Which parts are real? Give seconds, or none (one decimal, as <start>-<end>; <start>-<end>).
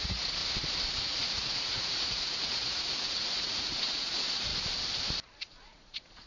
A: 0.4-1.0; 4.5-5.4